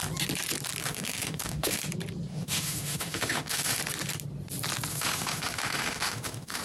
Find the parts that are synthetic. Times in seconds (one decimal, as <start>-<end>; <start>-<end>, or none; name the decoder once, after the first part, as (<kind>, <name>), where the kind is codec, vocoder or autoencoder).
0.8-1.8 (autoencoder, DAC-VAE); 2.3-3.8; 4.9-6.6